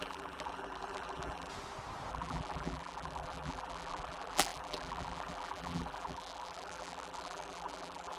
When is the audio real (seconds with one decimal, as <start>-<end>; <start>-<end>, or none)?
1.5-2.1